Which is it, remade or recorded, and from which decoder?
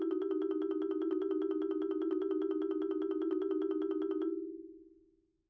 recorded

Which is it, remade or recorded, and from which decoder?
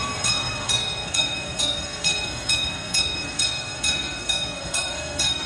remade, codec, SNAC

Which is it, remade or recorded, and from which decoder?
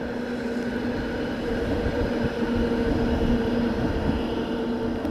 recorded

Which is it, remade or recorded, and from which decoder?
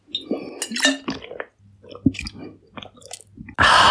recorded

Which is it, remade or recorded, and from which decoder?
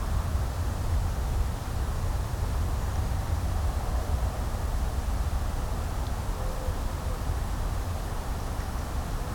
recorded